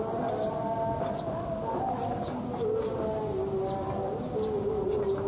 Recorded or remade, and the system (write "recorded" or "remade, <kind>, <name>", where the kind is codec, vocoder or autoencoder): recorded